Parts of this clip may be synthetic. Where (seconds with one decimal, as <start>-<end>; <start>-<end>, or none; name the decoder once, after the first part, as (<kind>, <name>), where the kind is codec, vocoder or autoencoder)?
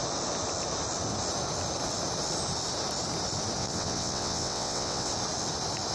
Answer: 3.6-5.1 (vocoder, WaveNeXt)